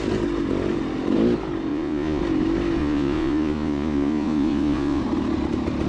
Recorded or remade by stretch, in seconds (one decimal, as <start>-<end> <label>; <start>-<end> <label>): 0.0-1.7 recorded; 1.7-2.2 remade; 2.2-2.8 recorded; 2.8-5.0 remade; 5.0-5.9 recorded